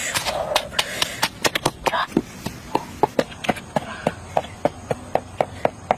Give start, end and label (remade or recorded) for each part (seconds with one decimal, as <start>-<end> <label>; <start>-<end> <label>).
0.0-4.0 recorded; 4.0-5.5 remade; 5.5-6.0 recorded